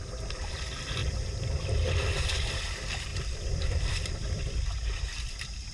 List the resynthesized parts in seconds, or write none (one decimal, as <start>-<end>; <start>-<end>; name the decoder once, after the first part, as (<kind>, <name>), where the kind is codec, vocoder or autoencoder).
1.0-2.5 (vocoder, BigVGAN v2); 3.1-4.4